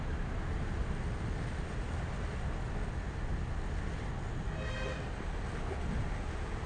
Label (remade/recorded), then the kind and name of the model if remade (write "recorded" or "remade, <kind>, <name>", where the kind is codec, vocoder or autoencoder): recorded